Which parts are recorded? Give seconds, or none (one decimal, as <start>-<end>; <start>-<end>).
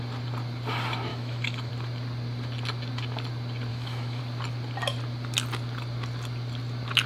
0.0-1.1; 1.7-3.7; 4.2-7.1